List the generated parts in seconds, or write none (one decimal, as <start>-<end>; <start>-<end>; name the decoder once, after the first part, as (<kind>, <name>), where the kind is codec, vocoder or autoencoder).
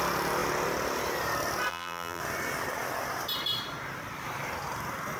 1.7-2.2 (vocoder, BigVGAN v2)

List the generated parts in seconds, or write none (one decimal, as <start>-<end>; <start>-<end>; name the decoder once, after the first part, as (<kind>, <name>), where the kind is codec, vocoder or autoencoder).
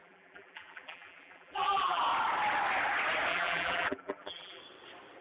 0.0-2.0 (vocoder, BigVGAN v2); 3.3-4.6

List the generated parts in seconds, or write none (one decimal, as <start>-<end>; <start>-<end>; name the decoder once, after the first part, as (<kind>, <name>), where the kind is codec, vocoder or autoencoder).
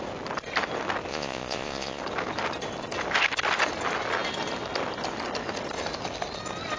1.1-2.0 (vocoder, Vocos)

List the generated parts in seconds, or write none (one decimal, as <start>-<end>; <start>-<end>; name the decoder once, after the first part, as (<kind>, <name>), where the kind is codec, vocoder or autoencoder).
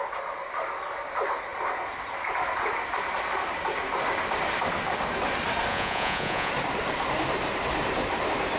5.7-6.5 (vocoder, Vocos)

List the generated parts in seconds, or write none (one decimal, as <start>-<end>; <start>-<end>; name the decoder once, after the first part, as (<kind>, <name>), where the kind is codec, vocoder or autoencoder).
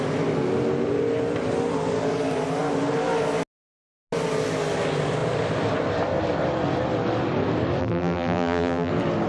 7.8-8.9 (vocoder, BigVGAN v2)